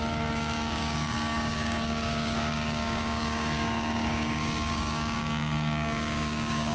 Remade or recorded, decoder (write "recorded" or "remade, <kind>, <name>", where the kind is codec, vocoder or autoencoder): remade, codec, DAC